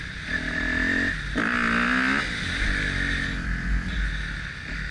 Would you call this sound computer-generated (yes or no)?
no